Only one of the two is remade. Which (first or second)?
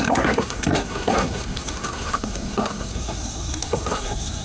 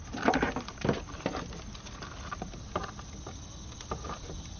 first